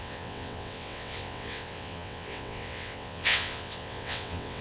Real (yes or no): no